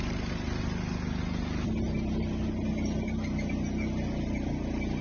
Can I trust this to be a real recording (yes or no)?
yes